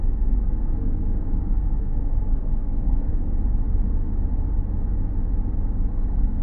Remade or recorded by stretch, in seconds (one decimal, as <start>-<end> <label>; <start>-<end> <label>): 0.0-3.1 remade; 3.1-5.9 recorded; 5.9-6.4 remade